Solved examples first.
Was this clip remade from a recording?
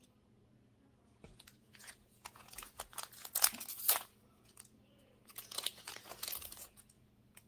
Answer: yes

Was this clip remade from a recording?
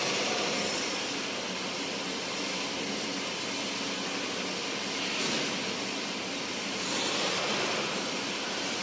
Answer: no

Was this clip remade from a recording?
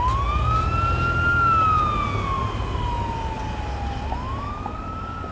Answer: no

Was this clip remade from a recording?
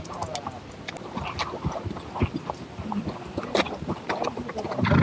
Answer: no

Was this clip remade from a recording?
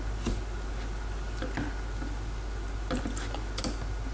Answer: no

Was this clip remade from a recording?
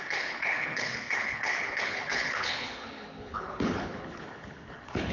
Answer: yes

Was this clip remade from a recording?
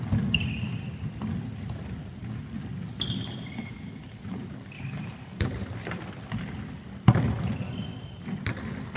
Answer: no